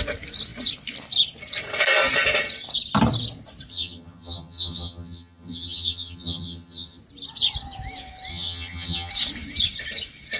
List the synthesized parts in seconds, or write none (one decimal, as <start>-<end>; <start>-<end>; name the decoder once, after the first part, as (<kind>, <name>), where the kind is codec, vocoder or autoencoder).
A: 3.7-7.0 (vocoder, HiFi-GAN); 8.3-9.1